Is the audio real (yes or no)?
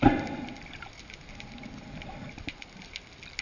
yes